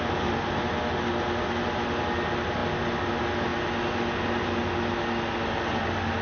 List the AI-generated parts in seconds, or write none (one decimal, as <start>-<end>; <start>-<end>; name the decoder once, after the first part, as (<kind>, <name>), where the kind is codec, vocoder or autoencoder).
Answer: none